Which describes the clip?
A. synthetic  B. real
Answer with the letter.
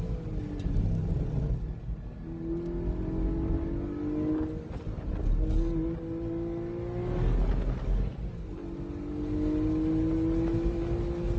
B